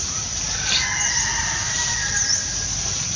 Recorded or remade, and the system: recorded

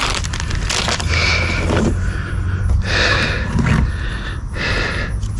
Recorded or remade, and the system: recorded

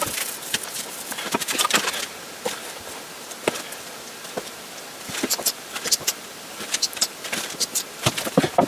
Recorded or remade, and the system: remade, vocoder, BigVGAN v2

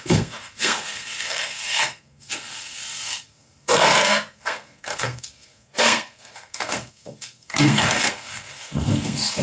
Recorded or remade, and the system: remade, codec, SNAC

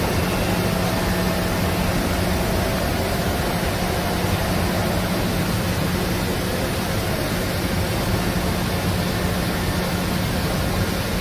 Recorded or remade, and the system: recorded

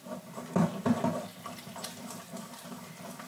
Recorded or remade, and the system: recorded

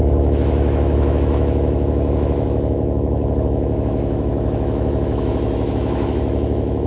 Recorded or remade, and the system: remade, autoencoder, DAC-VAE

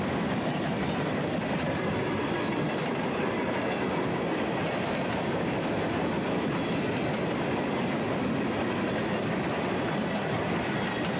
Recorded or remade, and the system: recorded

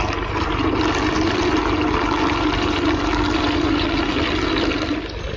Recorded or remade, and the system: recorded